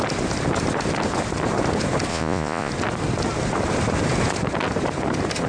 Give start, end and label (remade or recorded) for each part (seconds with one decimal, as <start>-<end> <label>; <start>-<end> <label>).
0.0-2.1 recorded; 2.1-2.7 remade; 2.7-5.5 recorded